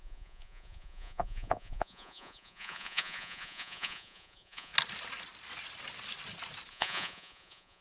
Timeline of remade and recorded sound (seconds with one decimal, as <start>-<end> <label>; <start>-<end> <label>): 0.0-4.7 remade; 4.7-6.7 recorded; 6.7-7.8 remade